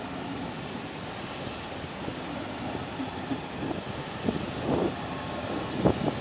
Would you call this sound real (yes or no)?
yes